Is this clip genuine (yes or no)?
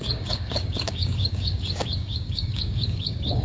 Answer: no